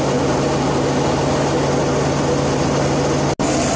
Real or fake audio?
real